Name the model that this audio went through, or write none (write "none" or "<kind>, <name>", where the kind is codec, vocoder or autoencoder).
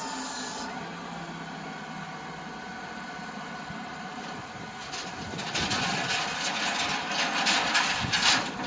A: none